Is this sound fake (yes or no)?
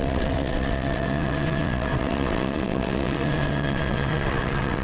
yes